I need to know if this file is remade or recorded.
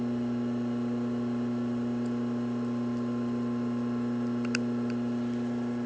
recorded